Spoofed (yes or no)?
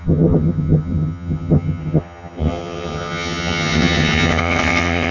yes